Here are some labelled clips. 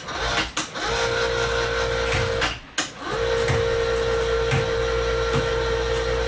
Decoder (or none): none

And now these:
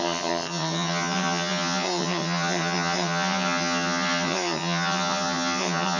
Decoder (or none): vocoder, HiFi-GAN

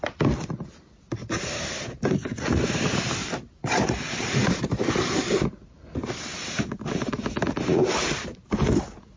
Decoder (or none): none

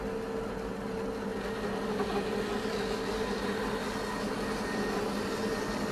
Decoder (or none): none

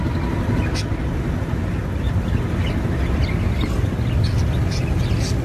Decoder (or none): none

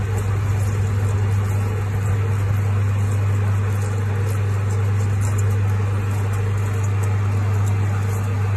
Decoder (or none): none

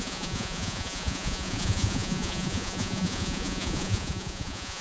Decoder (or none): vocoder, Vocos